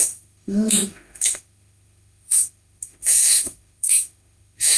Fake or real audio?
fake